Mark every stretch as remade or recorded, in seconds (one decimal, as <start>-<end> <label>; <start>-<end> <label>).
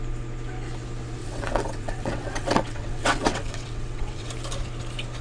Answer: 0.0-1.2 recorded; 1.2-4.3 remade; 4.3-5.2 recorded